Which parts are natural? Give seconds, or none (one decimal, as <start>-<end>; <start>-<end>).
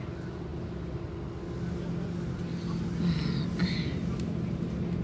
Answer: 0.0-5.0